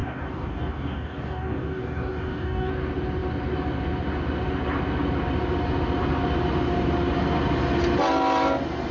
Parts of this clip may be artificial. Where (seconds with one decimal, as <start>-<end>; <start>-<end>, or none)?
0.0-2.7

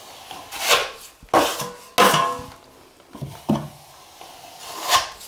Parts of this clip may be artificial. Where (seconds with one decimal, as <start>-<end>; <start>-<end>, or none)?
none

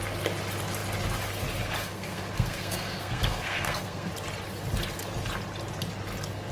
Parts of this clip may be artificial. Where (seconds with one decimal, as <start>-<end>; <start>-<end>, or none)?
1.8-4.1

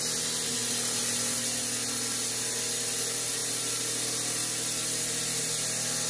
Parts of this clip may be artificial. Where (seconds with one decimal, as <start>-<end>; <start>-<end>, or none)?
none

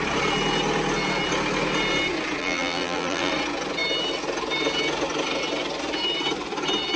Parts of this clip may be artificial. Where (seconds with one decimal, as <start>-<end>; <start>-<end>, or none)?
2.4-3.3

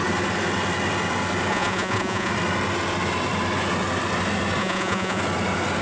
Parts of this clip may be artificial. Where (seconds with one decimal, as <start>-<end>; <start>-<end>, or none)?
1.5-2.3; 4.6-5.2